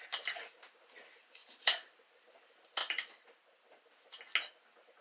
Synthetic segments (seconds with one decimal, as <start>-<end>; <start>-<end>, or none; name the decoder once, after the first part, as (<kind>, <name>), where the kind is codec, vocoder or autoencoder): 1.4-2.4 (vocoder, BigVGAN v2); 2.8-3.9